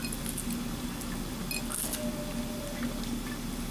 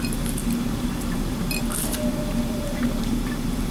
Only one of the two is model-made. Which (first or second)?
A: second